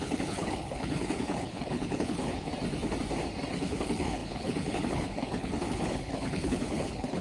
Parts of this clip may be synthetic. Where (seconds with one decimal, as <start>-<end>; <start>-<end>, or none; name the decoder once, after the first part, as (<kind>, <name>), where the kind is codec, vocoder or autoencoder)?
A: 0.0-2.5 (codec, HILCodec); 3.5-7.2